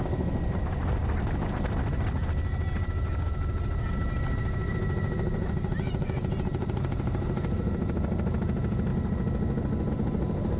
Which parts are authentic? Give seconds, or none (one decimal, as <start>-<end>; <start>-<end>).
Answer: 1.0-4.7; 8.9-9.9